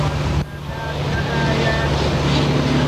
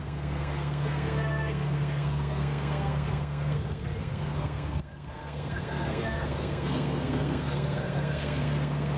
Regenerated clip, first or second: second